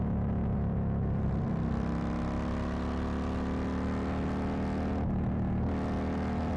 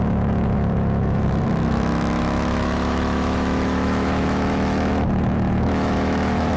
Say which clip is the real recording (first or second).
first